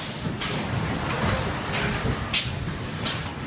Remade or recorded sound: recorded